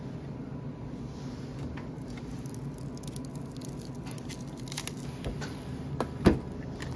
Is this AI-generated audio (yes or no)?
no